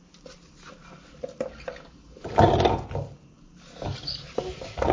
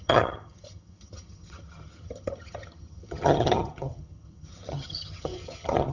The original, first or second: first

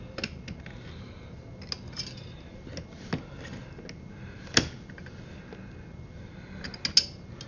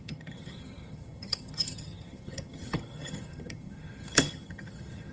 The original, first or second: first